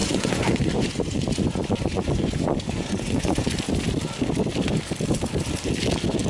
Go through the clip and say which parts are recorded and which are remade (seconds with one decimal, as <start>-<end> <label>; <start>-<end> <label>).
0.0-3.5 remade; 3.5-6.3 recorded